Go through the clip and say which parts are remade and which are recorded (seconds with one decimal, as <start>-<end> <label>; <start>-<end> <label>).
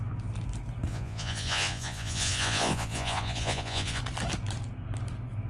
0.0-0.9 recorded; 0.9-4.0 remade; 4.0-5.5 recorded